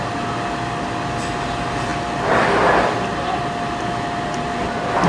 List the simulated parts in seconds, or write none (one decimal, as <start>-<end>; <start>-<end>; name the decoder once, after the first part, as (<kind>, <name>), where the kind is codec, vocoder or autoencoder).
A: none